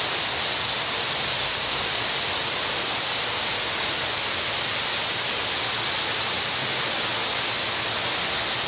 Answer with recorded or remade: recorded